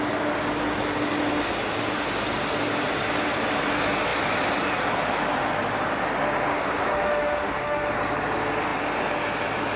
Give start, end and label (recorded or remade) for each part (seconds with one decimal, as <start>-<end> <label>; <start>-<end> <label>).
0.0-6.5 recorded; 6.5-7.9 remade; 7.9-9.8 recorded